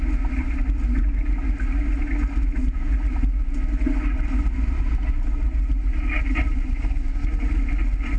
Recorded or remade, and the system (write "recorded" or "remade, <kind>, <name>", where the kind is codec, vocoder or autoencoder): recorded